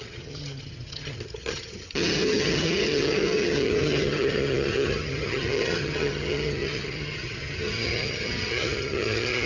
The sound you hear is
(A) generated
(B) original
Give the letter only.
A